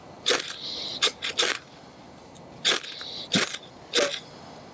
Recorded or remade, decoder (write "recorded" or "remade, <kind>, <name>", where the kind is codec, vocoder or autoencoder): recorded